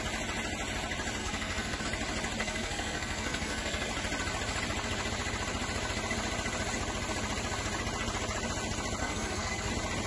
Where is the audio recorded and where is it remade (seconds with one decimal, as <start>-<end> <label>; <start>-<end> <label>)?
0.0-1.2 recorded; 1.2-1.8 remade; 1.8-2.4 recorded; 2.4-3.9 remade; 3.9-9.0 recorded; 9.0-9.7 remade; 9.7-10.1 recorded